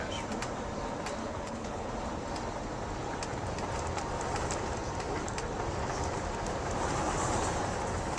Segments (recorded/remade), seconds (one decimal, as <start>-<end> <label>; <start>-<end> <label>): 0.0-1.2 recorded; 1.2-1.9 remade; 1.9-8.2 recorded